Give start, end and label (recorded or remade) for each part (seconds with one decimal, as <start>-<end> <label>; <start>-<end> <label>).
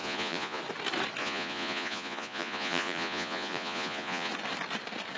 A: 0.0-0.6 remade; 0.6-1.2 recorded; 1.2-4.3 remade; 4.3-5.2 recorded